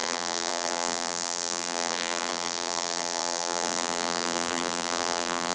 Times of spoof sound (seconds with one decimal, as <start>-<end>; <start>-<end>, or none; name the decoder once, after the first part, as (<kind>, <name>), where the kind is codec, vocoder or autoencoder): 0.0-5.5 (vocoder, BigVGAN v2)